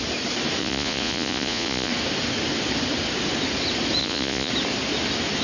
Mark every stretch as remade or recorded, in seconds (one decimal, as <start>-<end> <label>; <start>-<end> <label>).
0.0-0.6 recorded; 0.6-1.9 remade; 1.9-4.0 recorded; 4.0-4.5 remade; 4.5-5.4 recorded

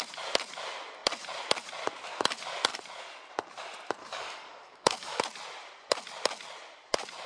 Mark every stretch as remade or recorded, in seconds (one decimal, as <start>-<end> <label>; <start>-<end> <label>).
0.0-4.0 recorded; 4.0-5.2 remade; 5.2-7.3 recorded

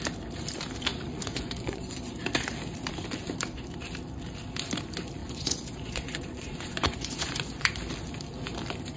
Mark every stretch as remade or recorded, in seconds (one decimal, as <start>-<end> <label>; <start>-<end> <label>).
0.0-0.9 recorded; 0.9-2.0 remade; 2.0-5.2 recorded; 5.2-7.7 remade; 7.7-9.0 recorded

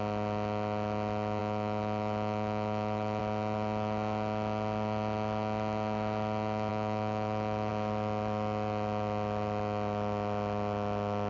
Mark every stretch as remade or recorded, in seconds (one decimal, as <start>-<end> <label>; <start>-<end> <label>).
0.0-1.4 recorded; 1.4-3.2 remade; 3.2-6.7 recorded; 6.7-7.7 remade; 7.7-11.3 recorded

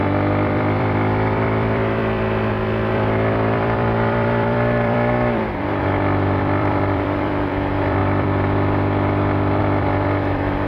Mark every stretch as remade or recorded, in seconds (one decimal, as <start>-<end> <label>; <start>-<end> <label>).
0.0-10.7 remade

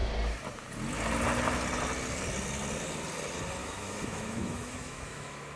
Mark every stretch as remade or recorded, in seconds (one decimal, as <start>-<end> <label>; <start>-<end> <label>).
0.0-3.6 recorded; 3.6-5.6 remade

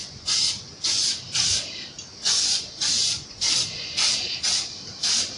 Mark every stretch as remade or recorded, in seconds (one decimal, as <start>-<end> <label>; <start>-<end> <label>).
0.0-1.0 remade; 1.0-2.2 recorded; 2.2-4.1 remade; 4.1-5.4 recorded